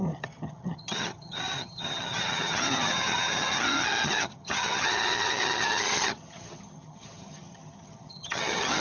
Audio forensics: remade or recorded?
remade